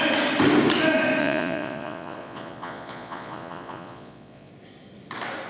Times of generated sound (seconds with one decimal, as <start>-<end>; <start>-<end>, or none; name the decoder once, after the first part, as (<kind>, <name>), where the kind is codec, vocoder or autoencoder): 1.2-4.5 (vocoder, Vocos)